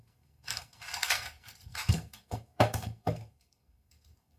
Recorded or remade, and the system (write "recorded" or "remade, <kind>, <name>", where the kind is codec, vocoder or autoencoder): remade, codec, SNAC